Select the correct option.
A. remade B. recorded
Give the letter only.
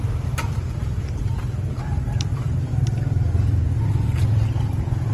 A